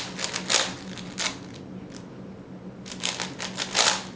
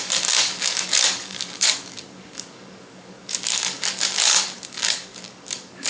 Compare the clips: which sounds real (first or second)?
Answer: first